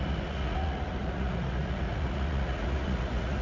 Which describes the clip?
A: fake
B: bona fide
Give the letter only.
A